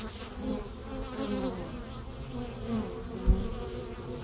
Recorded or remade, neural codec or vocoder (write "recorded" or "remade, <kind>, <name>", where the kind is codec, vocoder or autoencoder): recorded